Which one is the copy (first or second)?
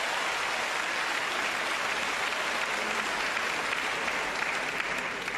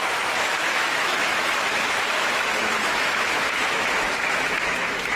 second